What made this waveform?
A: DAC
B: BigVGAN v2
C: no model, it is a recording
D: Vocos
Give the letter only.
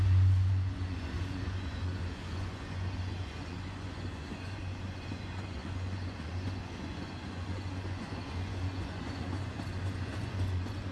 D